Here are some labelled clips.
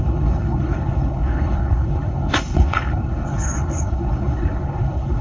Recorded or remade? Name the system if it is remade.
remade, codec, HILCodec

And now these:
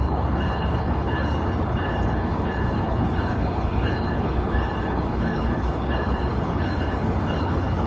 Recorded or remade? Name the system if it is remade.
remade, codec, HILCodec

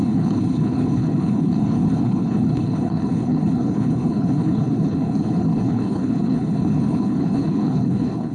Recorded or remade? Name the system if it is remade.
remade, codec, HILCodec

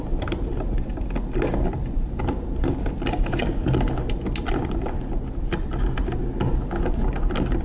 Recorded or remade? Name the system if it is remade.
recorded